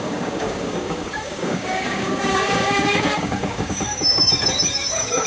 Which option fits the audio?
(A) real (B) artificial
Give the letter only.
B